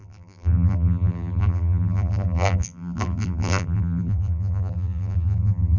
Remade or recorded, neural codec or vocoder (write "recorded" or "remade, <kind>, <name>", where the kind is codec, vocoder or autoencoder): remade, vocoder, BigVGAN v2